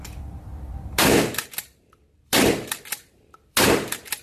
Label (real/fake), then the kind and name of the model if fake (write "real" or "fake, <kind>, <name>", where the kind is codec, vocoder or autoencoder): fake, vocoder, BigVGAN v2